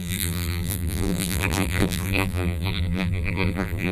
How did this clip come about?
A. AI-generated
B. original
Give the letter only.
A